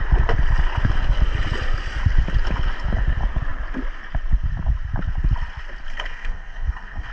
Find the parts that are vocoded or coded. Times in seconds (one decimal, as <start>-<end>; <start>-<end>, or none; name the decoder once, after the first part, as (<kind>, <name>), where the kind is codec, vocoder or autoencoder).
6.1-7.1 (codec, SNAC)